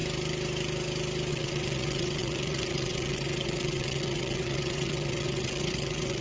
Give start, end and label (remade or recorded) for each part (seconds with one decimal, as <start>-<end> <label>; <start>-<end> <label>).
0.0-1.3 recorded; 1.3-6.2 remade